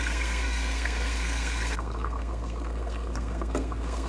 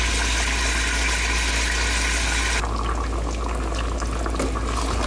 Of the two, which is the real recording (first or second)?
second